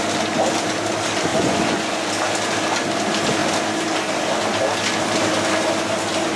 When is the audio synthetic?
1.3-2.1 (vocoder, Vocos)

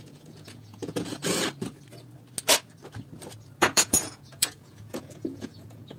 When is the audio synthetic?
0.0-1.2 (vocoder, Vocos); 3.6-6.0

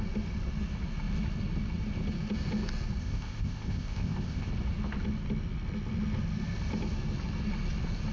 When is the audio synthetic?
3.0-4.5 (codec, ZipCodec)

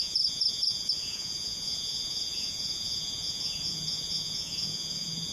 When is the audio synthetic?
0.0-5.3 (vocoder, Vocos)

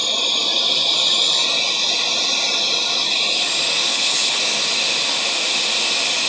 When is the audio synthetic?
3.9-4.4 (codec, HILCodec)

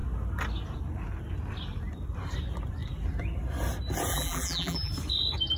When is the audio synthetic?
4.1-4.9 (vocoder, BigVGAN v2)

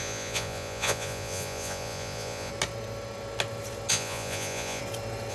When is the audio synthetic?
0.0-2.5 (vocoder, Vocos); 3.9-4.8

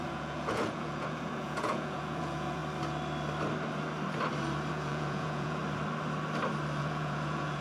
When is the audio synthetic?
0.0-2.6 (vocoder, Vocos); 4.7-5.6; 6.8-7.6